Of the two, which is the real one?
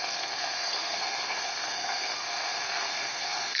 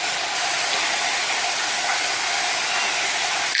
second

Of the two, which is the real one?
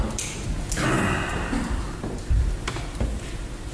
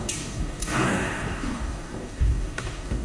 first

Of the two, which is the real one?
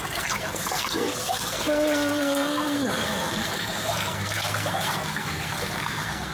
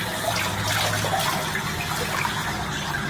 second